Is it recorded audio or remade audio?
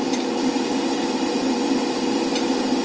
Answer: recorded